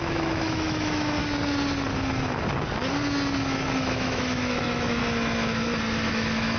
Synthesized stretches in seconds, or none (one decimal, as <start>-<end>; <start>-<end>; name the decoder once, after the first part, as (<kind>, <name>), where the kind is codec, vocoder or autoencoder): 0.0-1.2 (autoencoder, DAC-VAE); 3.8-5.0; 6.1-6.6